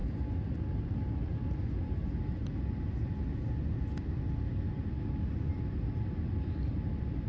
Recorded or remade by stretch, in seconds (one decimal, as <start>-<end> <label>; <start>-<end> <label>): 0.0-7.3 recorded